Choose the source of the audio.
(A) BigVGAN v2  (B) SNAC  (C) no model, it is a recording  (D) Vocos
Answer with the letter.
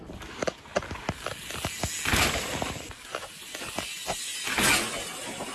C